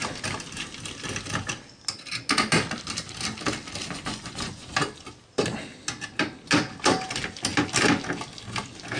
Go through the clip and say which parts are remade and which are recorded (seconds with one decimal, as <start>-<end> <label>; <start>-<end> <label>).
0.0-3.8 recorded; 3.8-4.7 remade; 4.7-9.0 recorded